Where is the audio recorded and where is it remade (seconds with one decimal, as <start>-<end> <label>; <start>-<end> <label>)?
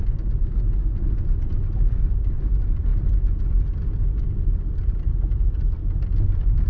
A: 0.0-4.8 recorded; 4.8-5.8 remade; 5.8-6.7 recorded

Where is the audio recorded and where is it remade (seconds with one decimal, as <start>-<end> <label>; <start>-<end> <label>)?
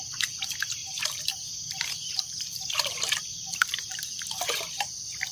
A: 0.0-0.8 recorded; 0.8-3.2 remade; 3.2-3.6 recorded; 3.6-4.8 remade; 4.8-5.3 recorded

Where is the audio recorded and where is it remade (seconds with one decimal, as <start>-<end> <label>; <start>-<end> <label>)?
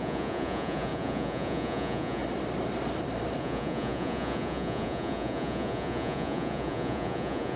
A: 0.0-2.2 remade; 2.2-3.4 recorded; 3.4-7.6 remade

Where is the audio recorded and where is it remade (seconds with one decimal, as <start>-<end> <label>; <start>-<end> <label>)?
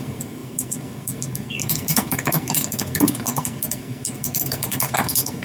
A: 0.0-5.4 remade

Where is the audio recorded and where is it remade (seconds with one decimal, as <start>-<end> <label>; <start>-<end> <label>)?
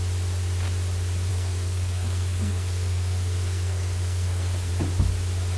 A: 0.0-1.3 recorded; 1.3-4.7 remade; 4.7-5.6 recorded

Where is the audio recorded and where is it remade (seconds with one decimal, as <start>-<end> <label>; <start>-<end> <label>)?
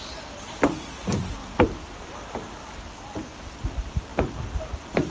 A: 0.0-1.4 remade; 1.4-3.5 recorded; 3.5-5.1 remade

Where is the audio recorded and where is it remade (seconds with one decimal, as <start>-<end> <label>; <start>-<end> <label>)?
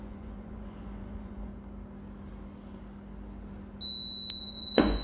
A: 0.0-1.5 remade; 1.5-4.4 recorded; 4.4-5.0 remade